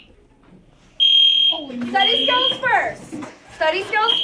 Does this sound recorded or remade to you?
recorded